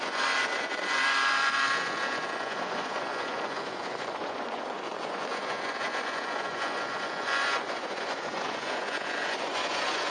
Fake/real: fake